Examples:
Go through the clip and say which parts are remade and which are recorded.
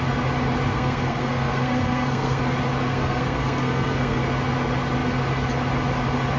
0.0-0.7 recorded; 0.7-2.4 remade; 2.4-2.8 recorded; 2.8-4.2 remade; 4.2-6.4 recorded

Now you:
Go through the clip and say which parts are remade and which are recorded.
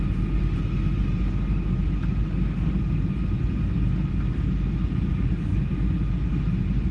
0.0-6.9 recorded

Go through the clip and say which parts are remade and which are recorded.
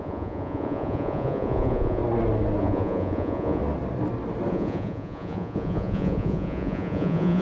0.0-2.0 remade; 2.0-2.6 recorded; 2.6-3.6 remade; 3.6-4.5 recorded; 4.5-7.4 remade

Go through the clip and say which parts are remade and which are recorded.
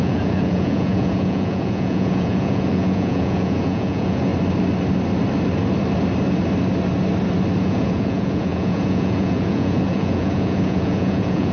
0.0-4.3 remade; 4.3-7.6 recorded; 7.6-11.5 remade